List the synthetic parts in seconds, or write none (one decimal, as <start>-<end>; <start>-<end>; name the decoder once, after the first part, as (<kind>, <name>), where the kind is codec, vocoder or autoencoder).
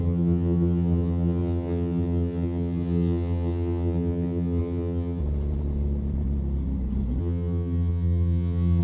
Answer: 0.0-5.2 (vocoder, HiFi-GAN); 7.2-8.8